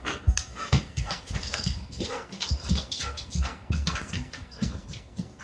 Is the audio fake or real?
fake